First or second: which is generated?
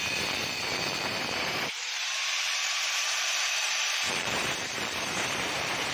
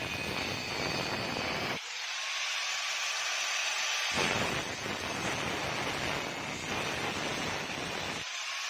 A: first